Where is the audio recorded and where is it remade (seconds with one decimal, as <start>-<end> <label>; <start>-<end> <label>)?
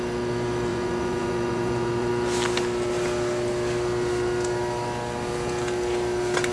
0.0-0.7 recorded; 0.7-2.1 remade; 2.1-6.5 recorded